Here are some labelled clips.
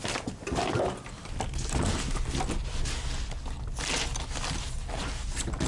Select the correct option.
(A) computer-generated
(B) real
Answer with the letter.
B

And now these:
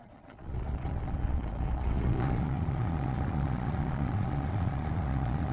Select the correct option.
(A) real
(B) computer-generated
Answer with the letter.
B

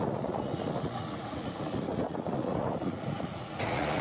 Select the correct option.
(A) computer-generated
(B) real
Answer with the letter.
A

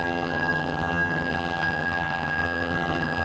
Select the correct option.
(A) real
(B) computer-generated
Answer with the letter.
B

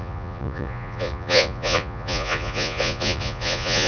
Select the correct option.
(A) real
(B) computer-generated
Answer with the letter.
B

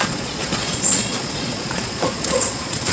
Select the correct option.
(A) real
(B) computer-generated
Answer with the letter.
B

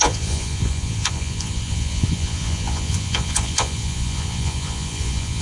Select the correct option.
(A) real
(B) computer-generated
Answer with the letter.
B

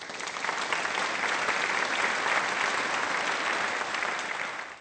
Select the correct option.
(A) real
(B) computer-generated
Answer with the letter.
A